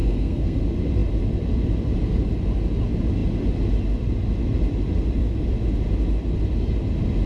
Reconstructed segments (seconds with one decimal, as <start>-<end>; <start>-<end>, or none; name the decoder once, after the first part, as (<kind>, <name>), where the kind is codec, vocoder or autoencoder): 0.0-0.6 (codec, SNAC)